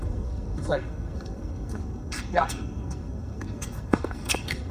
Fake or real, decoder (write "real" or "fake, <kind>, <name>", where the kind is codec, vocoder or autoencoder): fake, codec, SNAC